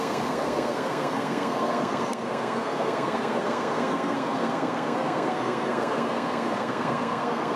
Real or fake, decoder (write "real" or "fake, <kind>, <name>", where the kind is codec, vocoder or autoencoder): fake, codec, SNAC